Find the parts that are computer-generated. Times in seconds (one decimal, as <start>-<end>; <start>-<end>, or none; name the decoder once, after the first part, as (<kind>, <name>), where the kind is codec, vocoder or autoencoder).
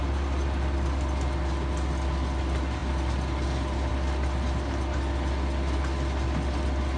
none